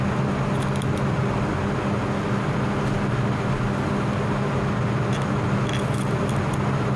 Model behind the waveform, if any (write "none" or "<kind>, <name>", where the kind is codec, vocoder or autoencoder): none